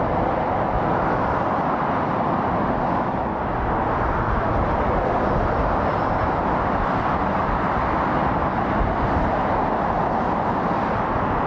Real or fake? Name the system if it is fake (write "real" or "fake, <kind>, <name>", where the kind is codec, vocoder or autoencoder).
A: real